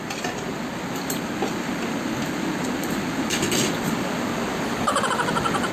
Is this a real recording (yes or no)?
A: yes